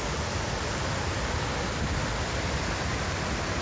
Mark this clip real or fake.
real